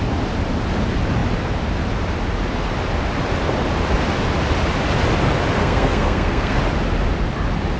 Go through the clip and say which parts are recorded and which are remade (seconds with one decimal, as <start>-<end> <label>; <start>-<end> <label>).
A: 0.0-5.6 recorded; 5.6-6.6 remade; 6.6-7.8 recorded